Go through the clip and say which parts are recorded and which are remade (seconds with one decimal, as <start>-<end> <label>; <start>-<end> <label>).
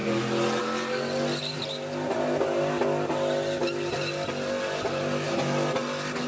0.0-6.3 recorded